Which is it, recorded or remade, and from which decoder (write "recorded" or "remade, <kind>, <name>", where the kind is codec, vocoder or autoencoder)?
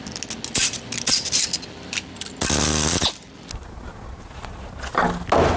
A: recorded